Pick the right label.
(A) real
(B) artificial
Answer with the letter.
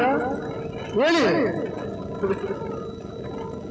A